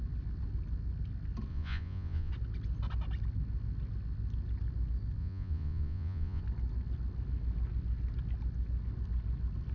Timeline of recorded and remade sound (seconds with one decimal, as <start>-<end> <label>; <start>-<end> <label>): 0.0-1.5 recorded; 1.5-2.3 remade; 2.3-5.2 recorded; 5.2-6.4 remade; 6.4-9.7 recorded